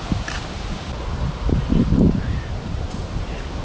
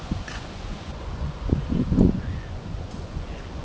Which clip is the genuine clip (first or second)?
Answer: first